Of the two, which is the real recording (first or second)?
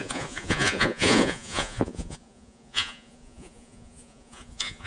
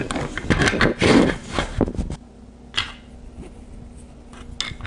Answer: second